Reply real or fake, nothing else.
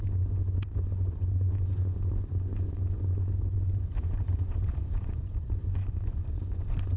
fake